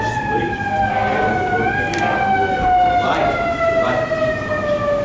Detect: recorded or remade recorded